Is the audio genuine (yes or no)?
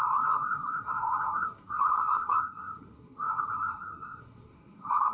no